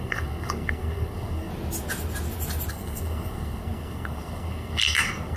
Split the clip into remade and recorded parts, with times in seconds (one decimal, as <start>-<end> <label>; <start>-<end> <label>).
0.0-1.5 remade; 1.5-2.7 recorded; 2.7-5.4 remade